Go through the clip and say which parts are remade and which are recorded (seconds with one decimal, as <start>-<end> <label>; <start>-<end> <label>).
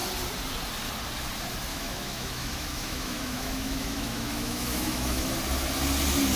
0.0-1.7 recorded; 1.7-5.4 remade; 5.4-6.4 recorded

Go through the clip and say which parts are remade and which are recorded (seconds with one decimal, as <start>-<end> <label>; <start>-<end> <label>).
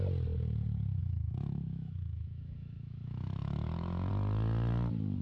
0.0-1.0 recorded; 1.0-4.1 remade; 4.1-5.2 recorded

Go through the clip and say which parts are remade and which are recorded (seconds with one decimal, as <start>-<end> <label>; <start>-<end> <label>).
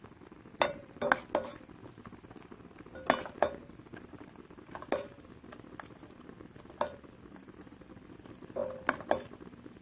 0.0-9.8 recorded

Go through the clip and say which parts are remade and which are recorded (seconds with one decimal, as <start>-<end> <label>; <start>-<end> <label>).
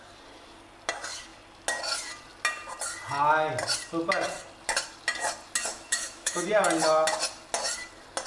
0.0-5.7 recorded; 5.7-6.5 remade; 6.5-8.3 recorded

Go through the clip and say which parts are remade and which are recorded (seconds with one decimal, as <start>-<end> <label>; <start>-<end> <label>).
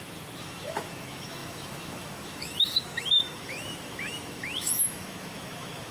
0.0-5.9 remade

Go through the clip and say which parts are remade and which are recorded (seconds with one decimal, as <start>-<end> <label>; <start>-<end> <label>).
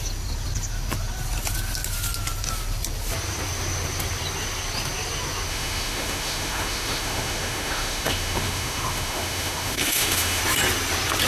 0.0-5.5 recorded; 5.5-10.4 remade; 10.4-11.3 recorded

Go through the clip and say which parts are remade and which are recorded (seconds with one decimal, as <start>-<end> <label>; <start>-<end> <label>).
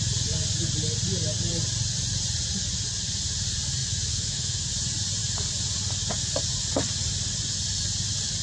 0.0-3.8 recorded; 3.8-4.6 remade; 4.6-8.4 recorded